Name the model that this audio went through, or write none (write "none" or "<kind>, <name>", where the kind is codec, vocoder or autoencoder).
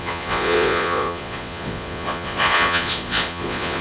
vocoder, Vocos